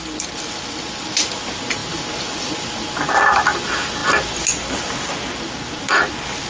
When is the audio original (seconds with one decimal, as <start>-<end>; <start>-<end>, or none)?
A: 0.0-6.5